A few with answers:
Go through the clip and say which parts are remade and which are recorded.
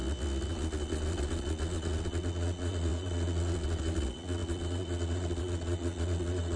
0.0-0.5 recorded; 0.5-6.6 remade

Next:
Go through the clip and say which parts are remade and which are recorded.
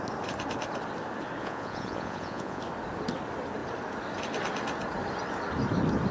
0.0-1.4 recorded; 1.4-2.6 remade; 2.6-6.1 recorded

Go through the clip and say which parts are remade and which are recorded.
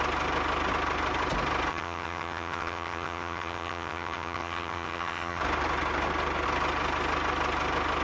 0.0-1.7 recorded; 1.7-5.4 remade; 5.4-8.0 recorded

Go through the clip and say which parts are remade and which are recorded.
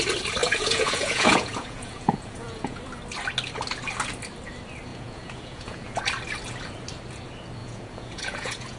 0.0-0.4 recorded; 0.4-2.8 remade; 2.8-4.9 recorded; 4.9-6.0 remade; 6.0-7.6 recorded; 7.6-8.8 remade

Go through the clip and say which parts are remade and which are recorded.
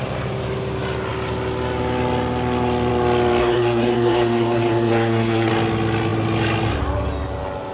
0.0-3.4 recorded; 3.4-5.5 remade; 5.5-7.7 recorded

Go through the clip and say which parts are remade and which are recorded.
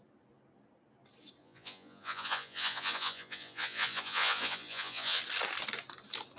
0.0-1.4 recorded; 1.4-5.2 remade; 5.2-6.4 recorded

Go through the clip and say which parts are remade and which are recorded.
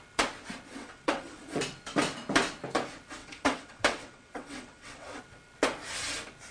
0.0-0.8 recorded; 0.8-1.6 remade; 1.6-3.2 recorded; 3.2-5.2 remade; 5.2-6.5 recorded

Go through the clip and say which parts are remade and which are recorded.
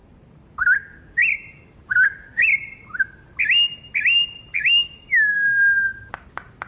0.0-4.5 recorded; 4.5-5.6 remade; 5.6-6.7 recorded